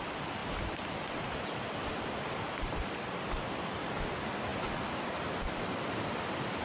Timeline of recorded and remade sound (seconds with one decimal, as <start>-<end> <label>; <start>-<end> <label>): 0.0-6.6 recorded